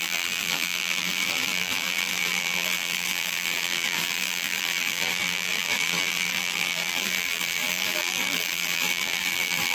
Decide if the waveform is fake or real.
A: fake